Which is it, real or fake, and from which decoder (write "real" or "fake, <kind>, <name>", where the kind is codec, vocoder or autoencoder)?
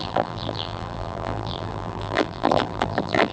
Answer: fake, vocoder, BigVGAN v2